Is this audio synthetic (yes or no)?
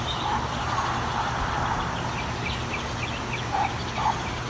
no